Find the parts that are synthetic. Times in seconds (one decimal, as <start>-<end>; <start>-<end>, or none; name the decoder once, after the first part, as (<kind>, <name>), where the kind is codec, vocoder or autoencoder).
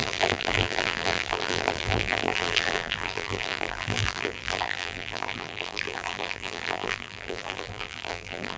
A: 0.0-8.6 (vocoder, BigVGAN v2)